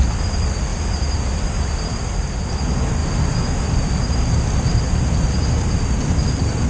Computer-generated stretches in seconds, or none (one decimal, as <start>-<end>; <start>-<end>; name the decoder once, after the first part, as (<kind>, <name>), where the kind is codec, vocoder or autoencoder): none